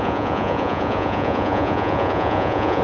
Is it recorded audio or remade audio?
remade